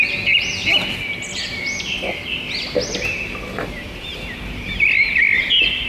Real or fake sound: real